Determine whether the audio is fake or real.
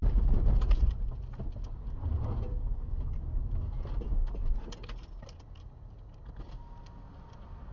real